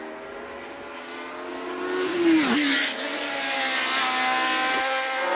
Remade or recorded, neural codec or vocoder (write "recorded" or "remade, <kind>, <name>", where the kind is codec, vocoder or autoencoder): recorded